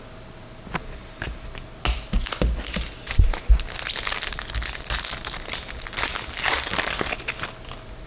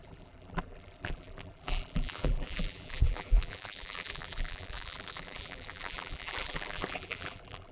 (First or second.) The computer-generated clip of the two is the second